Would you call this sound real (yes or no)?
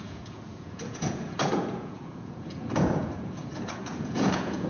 no